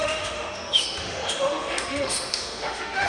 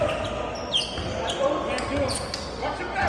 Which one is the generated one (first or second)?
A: first